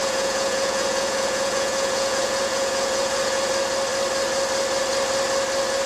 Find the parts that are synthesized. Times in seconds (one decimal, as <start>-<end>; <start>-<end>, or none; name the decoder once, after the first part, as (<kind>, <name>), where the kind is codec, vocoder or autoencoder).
0.0-3.5 (vocoder, Vocos)